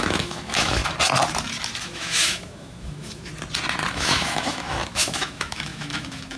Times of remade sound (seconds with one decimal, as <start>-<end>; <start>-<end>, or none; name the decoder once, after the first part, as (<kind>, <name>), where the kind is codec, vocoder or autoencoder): 0.0-0.8 (autoencoder, DAC-VAE); 1.8-3.3; 3.9-6.4